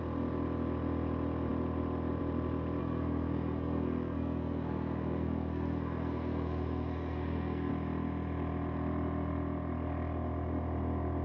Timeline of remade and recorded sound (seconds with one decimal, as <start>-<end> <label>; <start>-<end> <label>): 0.0-2.8 recorded; 2.8-7.7 remade; 7.7-11.2 recorded